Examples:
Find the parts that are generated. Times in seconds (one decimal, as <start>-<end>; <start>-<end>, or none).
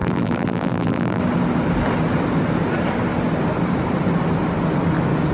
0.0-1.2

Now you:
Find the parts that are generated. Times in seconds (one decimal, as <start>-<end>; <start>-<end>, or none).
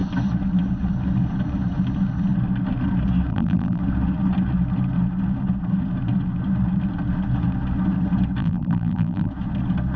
3.3-3.8; 8.4-9.3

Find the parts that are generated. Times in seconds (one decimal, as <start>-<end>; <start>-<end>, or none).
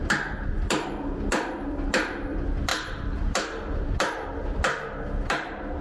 none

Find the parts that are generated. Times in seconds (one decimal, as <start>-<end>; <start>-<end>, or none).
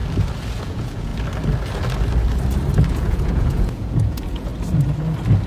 0.6-1.1; 2.9-4.5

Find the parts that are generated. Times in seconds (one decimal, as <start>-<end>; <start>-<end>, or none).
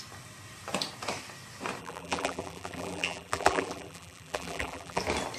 1.8-5.0